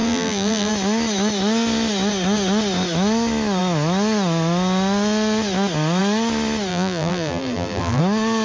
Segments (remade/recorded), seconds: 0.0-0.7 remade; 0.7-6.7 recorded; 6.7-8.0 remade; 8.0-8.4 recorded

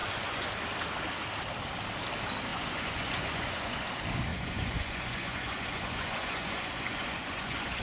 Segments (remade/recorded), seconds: 0.0-0.5 remade; 0.5-2.5 recorded; 2.5-3.9 remade; 3.9-4.3 recorded; 4.3-7.8 remade

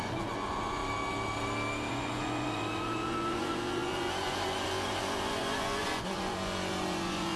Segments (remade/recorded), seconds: 0.0-0.8 remade; 0.8-1.9 recorded; 1.9-7.4 remade

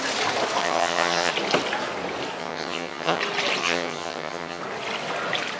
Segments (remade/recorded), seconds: 0.0-0.6 recorded; 0.6-1.3 remade; 1.3-2.4 recorded; 2.4-3.2 remade; 3.2-3.6 recorded; 3.6-4.6 remade; 4.6-5.6 recorded